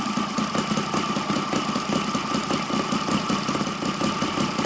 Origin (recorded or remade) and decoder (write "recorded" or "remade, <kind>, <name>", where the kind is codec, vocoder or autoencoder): recorded